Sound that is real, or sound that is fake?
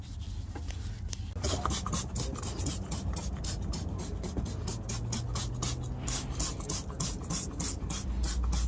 real